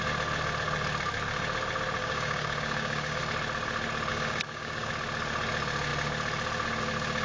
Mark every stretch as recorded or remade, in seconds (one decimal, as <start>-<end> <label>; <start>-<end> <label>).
0.0-2.0 recorded; 2.0-3.2 remade; 3.2-4.1 recorded; 4.1-4.9 remade; 4.9-7.2 recorded